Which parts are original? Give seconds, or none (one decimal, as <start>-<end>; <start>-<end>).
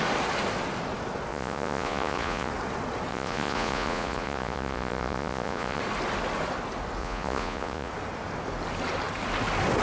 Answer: 0.0-1.3; 2.5-3.1; 5.8-7.0; 7.9-9.8